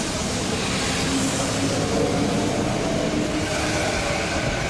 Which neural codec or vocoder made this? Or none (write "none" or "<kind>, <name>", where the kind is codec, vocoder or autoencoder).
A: none